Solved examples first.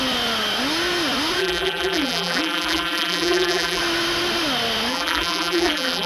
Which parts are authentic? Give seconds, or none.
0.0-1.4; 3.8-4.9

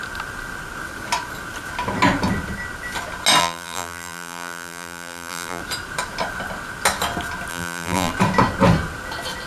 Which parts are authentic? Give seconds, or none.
0.0-3.4; 5.6-7.5; 8.1-9.5

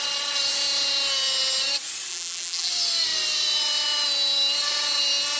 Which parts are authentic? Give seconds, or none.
0.0-2.1; 2.7-5.4

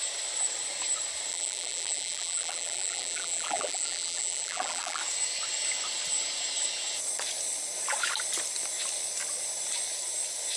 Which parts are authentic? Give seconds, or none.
0.0-1.3; 5.0-10.6

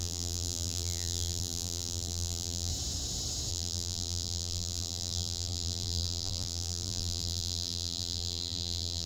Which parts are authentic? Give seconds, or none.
2.7-3.5

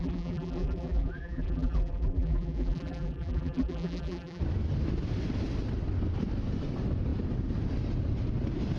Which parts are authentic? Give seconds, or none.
4.4-8.8